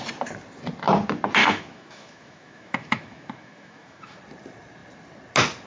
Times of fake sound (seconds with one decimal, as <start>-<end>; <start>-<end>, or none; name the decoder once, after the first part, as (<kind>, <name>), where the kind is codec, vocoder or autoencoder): 1.4-4.2 (autoencoder, DAC-VAE)